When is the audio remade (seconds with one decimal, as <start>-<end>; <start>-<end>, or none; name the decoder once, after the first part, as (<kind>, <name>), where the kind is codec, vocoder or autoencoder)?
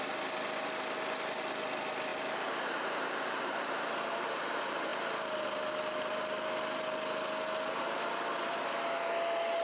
2.1-4.1 (vocoder, BigVGAN v2)